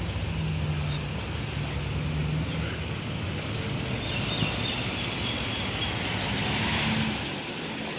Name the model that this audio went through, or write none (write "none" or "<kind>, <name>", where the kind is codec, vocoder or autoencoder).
none